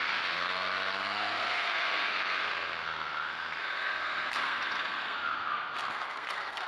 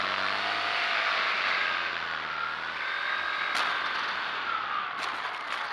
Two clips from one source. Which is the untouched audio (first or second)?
second